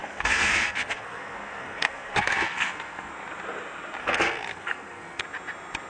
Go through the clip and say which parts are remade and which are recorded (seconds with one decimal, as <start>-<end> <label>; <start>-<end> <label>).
0.0-3.1 remade; 3.1-4.0 recorded; 4.0-5.2 remade; 5.2-5.9 recorded